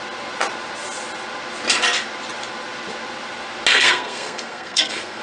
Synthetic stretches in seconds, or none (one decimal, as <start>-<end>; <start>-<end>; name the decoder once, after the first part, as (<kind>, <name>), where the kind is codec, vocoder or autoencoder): 3.7-5.2 (codec, SNAC)